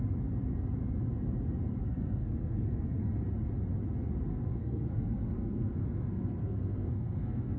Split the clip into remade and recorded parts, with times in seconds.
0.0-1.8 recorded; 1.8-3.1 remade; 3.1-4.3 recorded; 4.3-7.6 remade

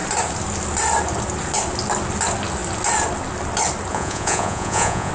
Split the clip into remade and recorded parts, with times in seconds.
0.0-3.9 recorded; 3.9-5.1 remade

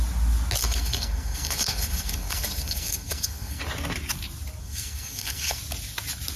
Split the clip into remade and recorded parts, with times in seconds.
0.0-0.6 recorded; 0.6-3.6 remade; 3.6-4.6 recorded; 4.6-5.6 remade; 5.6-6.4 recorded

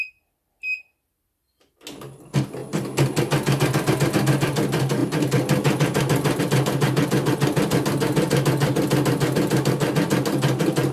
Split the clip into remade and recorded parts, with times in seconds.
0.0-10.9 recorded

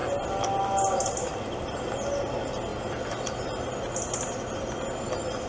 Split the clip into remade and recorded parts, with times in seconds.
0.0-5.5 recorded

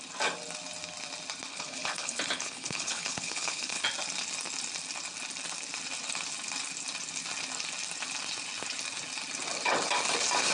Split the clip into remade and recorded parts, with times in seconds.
0.0-1.5 recorded; 1.5-3.8 remade; 3.8-10.5 recorded

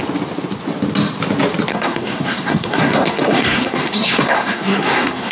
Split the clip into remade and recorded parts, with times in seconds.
0.0-1.7 recorded; 1.7-5.3 remade